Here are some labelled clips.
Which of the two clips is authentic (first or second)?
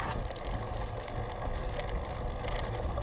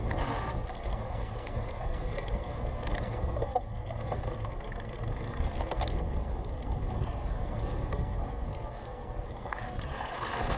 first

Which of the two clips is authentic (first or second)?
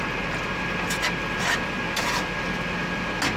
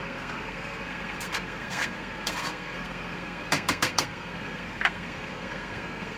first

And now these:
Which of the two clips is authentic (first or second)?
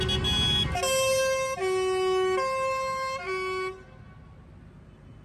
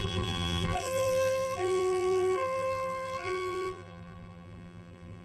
first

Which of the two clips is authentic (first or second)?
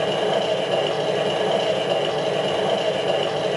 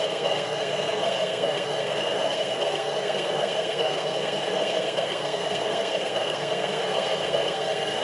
first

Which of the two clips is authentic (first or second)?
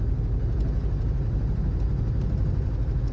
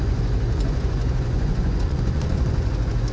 first